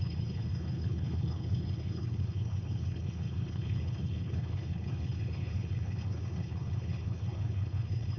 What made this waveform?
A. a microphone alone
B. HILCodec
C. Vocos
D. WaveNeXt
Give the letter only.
B